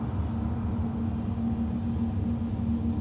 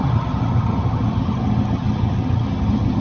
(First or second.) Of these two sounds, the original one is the first